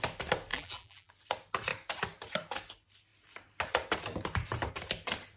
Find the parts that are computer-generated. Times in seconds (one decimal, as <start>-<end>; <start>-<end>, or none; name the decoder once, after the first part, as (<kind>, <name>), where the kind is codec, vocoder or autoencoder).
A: 0.5-1.1 (vocoder, BigVGAN v2)

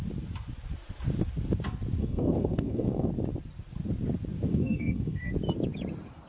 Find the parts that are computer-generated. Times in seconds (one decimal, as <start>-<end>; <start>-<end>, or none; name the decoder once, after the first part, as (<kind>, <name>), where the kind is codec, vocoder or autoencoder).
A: 2.0-3.1 (codec, SNAC); 4.5-5.3

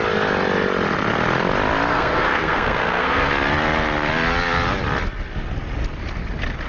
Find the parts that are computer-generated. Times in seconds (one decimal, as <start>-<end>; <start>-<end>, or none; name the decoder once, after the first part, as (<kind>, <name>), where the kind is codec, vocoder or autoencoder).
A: 1.9-3.3 (codec, SNAC)